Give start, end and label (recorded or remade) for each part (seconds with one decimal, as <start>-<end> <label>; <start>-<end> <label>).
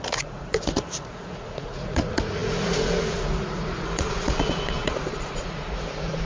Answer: 0.0-6.3 remade